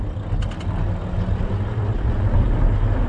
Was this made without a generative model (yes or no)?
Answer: yes